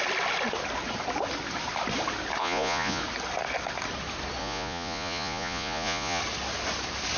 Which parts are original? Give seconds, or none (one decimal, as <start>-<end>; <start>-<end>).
0.0-2.4; 3.0-4.4; 6.2-7.2